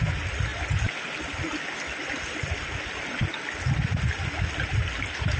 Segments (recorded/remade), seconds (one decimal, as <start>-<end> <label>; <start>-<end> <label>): 0.0-5.4 recorded